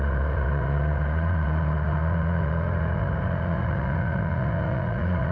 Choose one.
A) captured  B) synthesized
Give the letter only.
B